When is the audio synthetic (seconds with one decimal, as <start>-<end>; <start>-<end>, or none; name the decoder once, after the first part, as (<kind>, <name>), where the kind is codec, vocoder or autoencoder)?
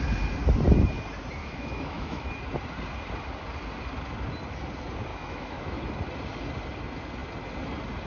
1.4-2.3 (autoencoder, DAC-VAE); 5.1-5.8